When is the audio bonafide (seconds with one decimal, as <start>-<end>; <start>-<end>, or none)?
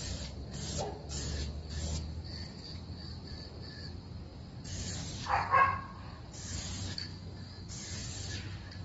0.0-7.1; 7.7-8.8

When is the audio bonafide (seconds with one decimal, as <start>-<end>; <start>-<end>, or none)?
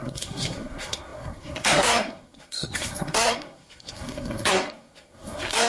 none